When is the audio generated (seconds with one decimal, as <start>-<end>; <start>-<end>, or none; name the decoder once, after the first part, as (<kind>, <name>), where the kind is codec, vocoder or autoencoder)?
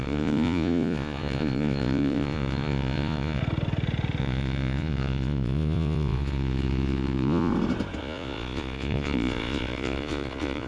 0.0-3.4 (vocoder, Vocos); 4.2-7.5; 8.0-10.7